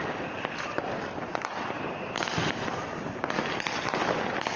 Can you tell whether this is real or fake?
fake